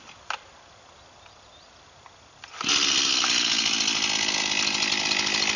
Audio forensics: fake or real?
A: real